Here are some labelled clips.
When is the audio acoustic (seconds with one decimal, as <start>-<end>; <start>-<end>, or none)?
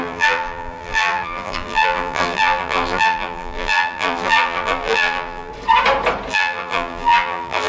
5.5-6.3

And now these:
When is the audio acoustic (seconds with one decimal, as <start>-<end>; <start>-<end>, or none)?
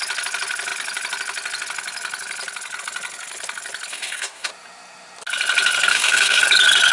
0.0-3.9; 4.5-5.9; 6.4-6.9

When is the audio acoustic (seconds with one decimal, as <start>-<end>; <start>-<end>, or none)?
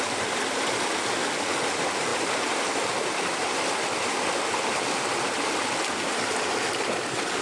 0.0-7.4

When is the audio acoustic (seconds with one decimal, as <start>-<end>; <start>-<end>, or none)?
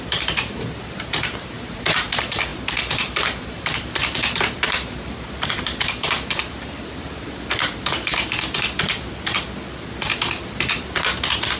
8.1-10.5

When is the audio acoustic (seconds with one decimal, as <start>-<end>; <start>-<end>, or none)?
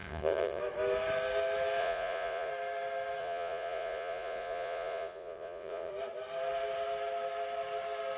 0.6-1.8; 2.5-3.2; 5.9-8.2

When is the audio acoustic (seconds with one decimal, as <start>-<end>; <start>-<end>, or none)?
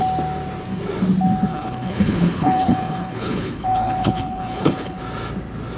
0.0-1.5; 5.0-5.8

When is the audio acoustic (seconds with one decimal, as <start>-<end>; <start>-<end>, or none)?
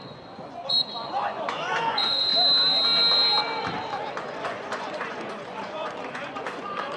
2.3-4.1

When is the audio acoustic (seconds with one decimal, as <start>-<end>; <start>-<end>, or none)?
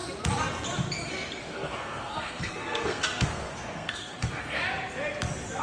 0.0-1.4; 4.6-5.6